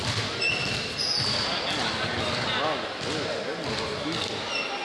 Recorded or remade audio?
recorded